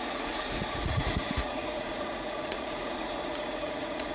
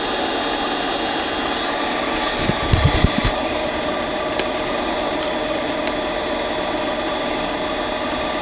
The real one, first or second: second